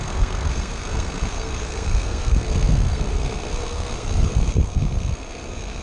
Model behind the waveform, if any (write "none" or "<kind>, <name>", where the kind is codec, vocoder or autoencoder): codec, SNAC